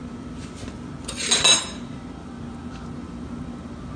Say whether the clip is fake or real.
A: real